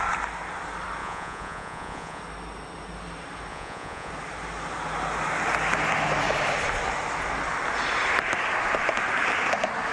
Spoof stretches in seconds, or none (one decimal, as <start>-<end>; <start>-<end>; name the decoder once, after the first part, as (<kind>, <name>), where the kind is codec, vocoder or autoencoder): 1.0-2.2 (vocoder, Vocos); 3.5-4.1